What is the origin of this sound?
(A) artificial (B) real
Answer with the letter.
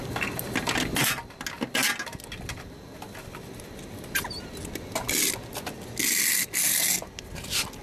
B